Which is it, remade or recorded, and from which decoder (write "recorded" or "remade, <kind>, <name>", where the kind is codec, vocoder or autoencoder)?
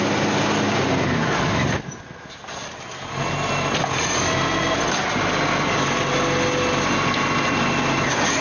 recorded